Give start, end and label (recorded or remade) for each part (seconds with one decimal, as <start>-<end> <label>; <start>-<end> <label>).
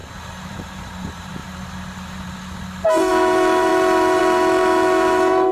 0.0-0.5 recorded; 0.5-1.4 remade; 1.4-3.1 recorded; 3.1-5.5 remade